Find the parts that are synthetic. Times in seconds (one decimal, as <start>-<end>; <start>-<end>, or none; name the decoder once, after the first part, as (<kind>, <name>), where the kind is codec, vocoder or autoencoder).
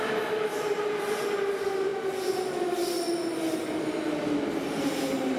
none